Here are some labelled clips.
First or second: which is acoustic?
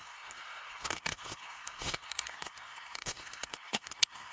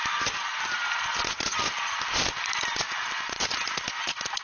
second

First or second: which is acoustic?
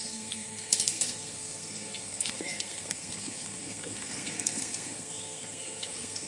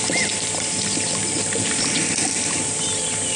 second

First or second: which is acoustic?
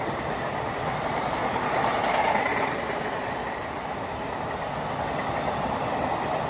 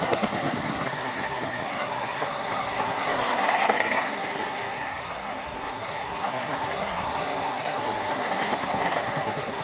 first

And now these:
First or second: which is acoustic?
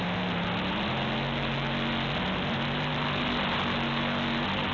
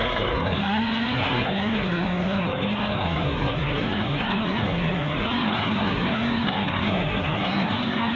first